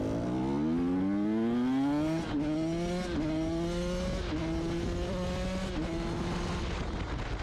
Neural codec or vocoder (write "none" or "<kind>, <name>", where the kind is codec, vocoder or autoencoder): none